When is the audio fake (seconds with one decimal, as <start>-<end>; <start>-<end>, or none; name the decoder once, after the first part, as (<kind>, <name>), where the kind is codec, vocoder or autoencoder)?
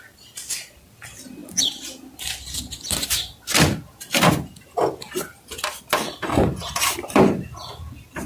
none